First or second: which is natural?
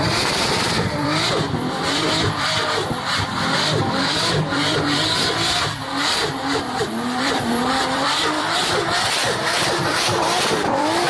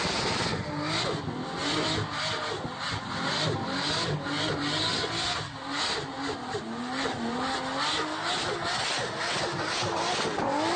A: second